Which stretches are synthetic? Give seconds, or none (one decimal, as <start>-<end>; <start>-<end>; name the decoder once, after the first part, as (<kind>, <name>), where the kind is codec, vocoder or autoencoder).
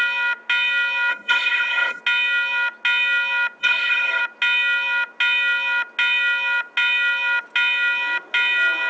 1.1-2.0 (codec, SNAC); 3.6-4.2